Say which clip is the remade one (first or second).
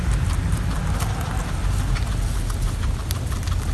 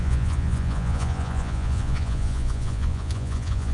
second